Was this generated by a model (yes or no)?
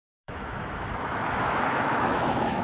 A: yes